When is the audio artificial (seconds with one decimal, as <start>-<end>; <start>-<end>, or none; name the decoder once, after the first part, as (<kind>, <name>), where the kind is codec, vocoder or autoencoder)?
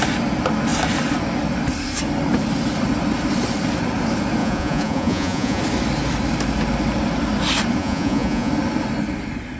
4.4-5.6 (vocoder, Vocos); 7.8-8.5